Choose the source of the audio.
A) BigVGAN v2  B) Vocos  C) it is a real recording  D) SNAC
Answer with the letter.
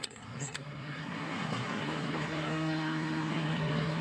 D